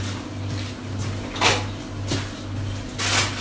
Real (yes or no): yes